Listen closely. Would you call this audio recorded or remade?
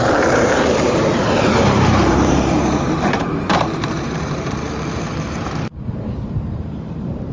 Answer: remade